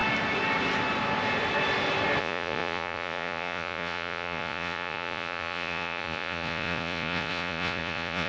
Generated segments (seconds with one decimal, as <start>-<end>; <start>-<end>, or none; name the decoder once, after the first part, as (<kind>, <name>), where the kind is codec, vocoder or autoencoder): 2.2-8.3 (vocoder, Vocos)